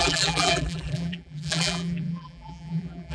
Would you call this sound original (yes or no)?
no